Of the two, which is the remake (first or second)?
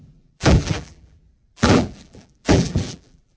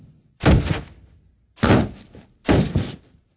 first